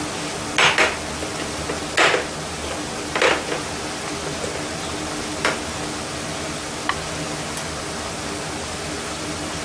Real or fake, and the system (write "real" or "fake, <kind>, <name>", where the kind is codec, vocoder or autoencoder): real